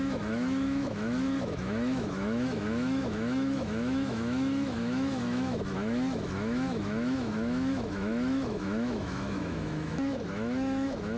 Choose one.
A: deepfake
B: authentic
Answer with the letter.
A